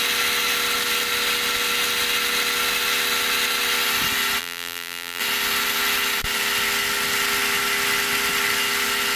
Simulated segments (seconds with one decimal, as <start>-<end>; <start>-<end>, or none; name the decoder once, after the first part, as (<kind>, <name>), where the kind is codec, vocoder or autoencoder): 4.4-5.2 (vocoder, BigVGAN v2)